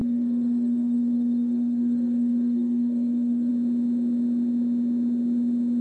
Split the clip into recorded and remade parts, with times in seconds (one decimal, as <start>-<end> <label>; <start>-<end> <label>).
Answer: 0.0-3.5 remade; 3.5-5.8 recorded